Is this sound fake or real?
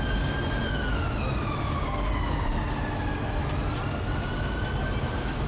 real